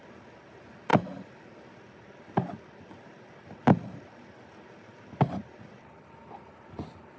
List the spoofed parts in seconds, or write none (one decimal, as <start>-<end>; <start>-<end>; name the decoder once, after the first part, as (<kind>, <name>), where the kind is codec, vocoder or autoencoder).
none